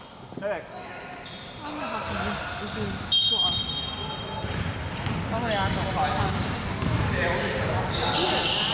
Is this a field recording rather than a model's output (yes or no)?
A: yes